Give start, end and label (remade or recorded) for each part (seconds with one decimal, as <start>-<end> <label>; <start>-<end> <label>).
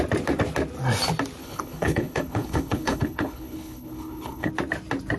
0.0-1.4 recorded; 1.4-4.5 remade; 4.5-5.2 recorded